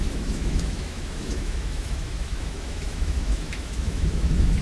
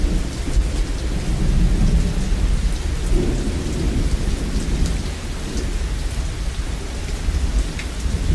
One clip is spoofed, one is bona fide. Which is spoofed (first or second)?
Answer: first